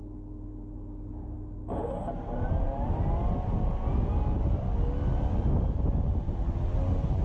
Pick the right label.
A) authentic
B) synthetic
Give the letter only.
A